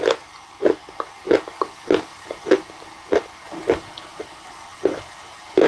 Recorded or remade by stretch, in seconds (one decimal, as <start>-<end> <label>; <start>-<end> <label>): 0.0-0.8 remade; 0.8-4.2 recorded; 4.2-4.7 remade; 4.7-5.7 recorded